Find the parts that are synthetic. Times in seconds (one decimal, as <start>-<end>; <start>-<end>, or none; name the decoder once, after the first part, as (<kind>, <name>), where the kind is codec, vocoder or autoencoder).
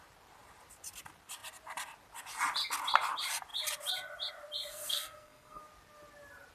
4.7-5.6 (codec, SNAC)